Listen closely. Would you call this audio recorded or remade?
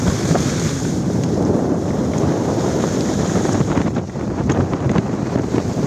remade